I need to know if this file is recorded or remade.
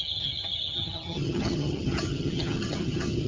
remade